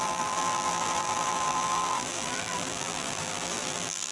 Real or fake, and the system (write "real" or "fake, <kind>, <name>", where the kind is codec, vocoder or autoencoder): fake, vocoder, BigVGAN v2